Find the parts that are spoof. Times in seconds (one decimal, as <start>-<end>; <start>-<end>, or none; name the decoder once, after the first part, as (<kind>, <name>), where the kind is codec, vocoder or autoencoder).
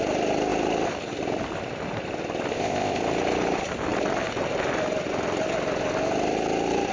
2.5-3.0 (codec, ZipCodec)